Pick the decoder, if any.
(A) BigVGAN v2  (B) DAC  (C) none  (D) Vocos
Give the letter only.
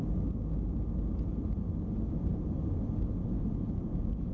C